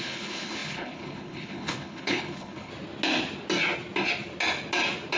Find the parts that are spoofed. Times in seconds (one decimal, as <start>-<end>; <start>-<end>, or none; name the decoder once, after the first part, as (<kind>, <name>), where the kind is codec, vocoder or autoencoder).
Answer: 0.0-2.7 (codec, HILCodec)